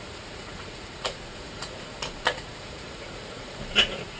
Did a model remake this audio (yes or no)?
yes